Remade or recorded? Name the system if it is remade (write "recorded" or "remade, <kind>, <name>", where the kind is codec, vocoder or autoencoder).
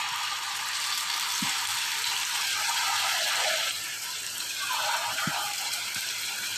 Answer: remade, vocoder, BigVGAN v2